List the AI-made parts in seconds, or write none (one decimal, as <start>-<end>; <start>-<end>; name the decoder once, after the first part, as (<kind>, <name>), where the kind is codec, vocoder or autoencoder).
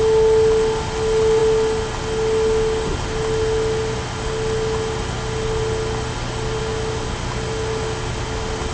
none